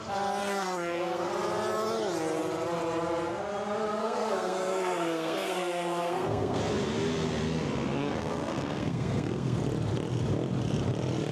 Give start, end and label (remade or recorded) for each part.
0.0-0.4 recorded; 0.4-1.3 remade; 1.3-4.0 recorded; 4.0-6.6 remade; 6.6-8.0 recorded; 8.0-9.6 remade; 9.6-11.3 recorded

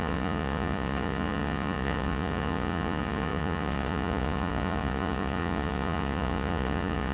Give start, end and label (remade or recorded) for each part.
0.0-7.1 remade

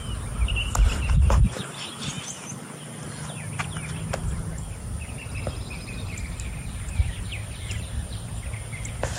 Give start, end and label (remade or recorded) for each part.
0.0-5.8 recorded; 5.8-8.3 remade; 8.3-9.2 recorded

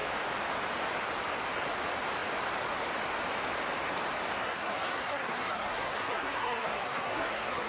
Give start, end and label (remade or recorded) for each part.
0.0-4.4 recorded; 4.4-7.7 remade

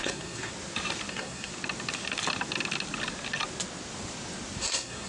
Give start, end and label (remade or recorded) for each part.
0.0-0.5 remade; 0.5-1.1 recorded; 1.1-1.5 remade; 1.5-4.6 recorded; 4.6-5.1 remade